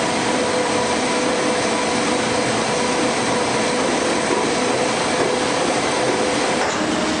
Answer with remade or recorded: recorded